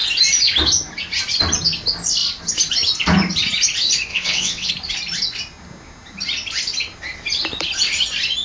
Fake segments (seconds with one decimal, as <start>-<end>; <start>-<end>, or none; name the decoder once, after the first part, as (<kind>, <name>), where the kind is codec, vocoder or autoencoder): 4.1-4.7 (vocoder, WaveNeXt)